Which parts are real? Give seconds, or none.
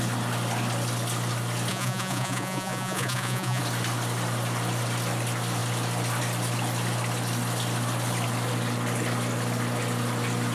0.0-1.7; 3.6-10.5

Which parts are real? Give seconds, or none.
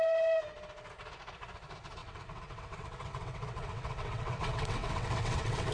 0.0-2.0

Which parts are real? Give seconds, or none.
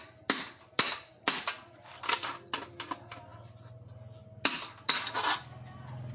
0.0-6.1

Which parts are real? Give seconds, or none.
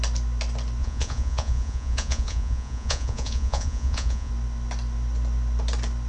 0.0-0.8; 4.3-6.1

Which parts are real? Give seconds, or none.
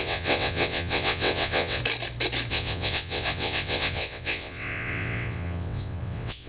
1.8-2.5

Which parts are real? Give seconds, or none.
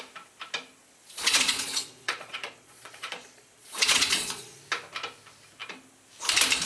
0.0-0.8; 4.6-6.7